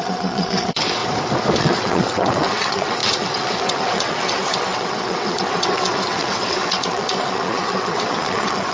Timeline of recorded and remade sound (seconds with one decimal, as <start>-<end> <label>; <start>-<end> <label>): 0.0-1.0 remade; 1.0-1.6 recorded; 1.6-8.7 remade